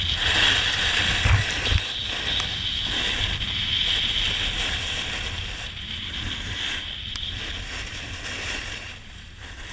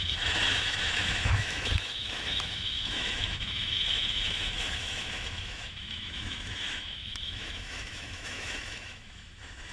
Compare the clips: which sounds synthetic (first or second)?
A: second